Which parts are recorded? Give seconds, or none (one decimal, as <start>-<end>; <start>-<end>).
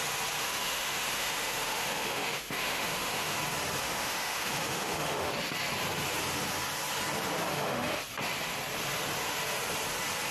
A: 0.0-0.4; 3.4-3.8; 5.3-7.5; 8.0-10.3